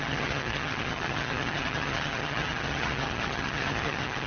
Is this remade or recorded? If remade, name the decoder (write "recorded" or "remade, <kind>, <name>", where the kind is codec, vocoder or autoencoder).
remade, vocoder, HiFi-GAN